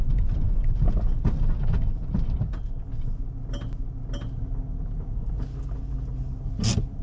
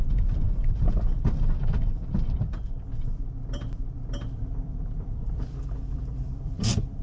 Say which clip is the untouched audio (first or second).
first